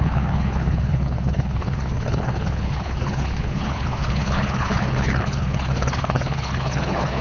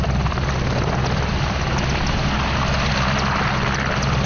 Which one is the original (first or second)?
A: second